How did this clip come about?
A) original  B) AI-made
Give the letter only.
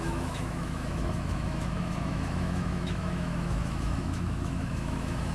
B